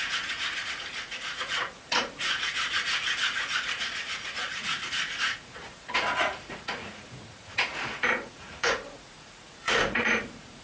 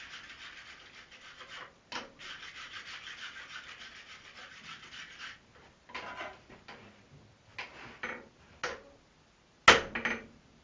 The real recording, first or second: second